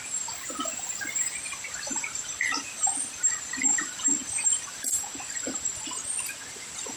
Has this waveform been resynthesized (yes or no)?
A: no